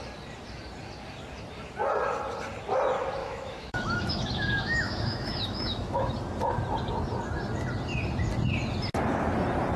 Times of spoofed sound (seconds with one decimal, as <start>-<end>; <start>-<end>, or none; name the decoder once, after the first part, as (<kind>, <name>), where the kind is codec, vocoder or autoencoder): 3.2-6.1 (autoencoder, DAC-VAE)